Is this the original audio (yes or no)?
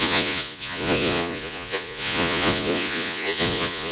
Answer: no